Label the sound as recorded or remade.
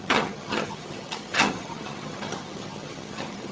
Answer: remade